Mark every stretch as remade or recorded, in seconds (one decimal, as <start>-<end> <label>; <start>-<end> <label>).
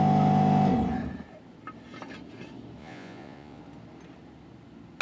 0.0-2.8 recorded; 2.8-3.6 remade; 3.6-5.0 recorded